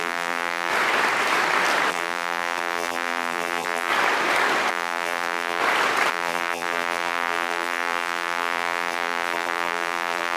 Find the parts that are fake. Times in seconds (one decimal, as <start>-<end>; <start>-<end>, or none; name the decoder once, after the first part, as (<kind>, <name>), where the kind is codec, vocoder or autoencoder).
0.0-0.7 (vocoder, BigVGAN v2); 1.9-3.9; 4.7-5.6; 6.1-10.4